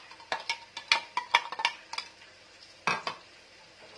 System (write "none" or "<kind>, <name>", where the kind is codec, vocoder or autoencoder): none